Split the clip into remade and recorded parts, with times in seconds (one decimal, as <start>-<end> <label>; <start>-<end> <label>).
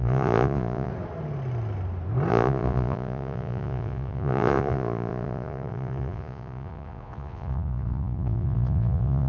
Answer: 0.0-0.9 remade; 0.9-2.3 recorded; 2.3-9.3 remade